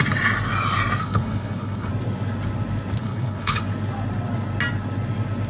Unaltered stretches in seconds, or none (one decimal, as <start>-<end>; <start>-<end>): 0.0-1.0; 1.9-3.0; 3.6-5.5